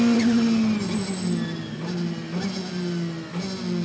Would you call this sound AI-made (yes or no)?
no